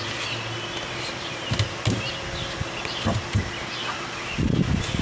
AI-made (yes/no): no